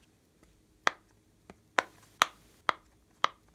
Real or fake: real